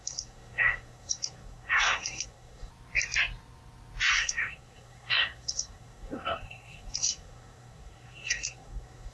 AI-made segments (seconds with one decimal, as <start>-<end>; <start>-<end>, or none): 0.0-2.7; 4.1-9.1

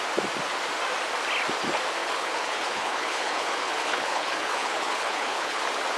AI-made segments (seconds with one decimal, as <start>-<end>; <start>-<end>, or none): 2.0-5.6

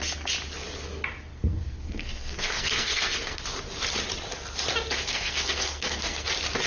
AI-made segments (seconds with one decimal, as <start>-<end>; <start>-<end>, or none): 1.3-3.4; 5.1-6.3